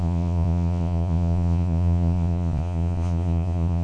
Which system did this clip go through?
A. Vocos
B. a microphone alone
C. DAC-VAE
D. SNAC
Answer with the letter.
A